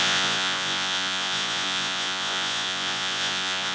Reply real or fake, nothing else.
fake